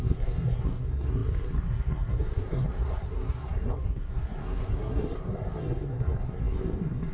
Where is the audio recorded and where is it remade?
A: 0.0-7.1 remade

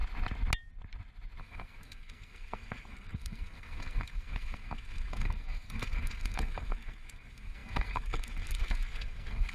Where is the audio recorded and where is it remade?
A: 0.0-1.4 recorded; 1.4-9.5 remade

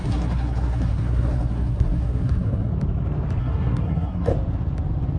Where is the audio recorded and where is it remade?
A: 0.0-2.7 remade; 2.7-3.4 recorded; 3.4-4.3 remade; 4.3-5.2 recorded

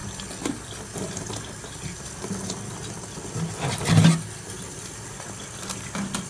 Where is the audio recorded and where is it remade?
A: 0.0-6.3 recorded

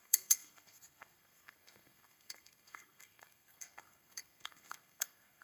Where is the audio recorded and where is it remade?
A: 0.0-5.4 remade

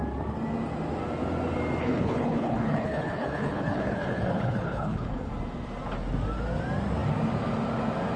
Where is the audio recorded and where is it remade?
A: 0.0-1.8 recorded; 1.8-5.3 remade; 5.3-8.2 recorded

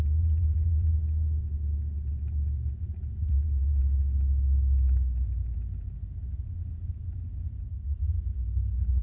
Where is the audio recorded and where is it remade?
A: 0.0-0.9 remade; 0.9-2.8 recorded; 2.8-3.8 remade; 3.8-6.9 recorded; 6.9-8.3 remade; 8.3-9.0 recorded